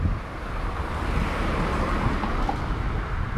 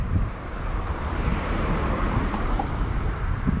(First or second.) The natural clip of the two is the first